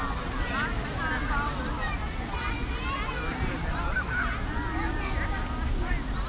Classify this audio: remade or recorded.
recorded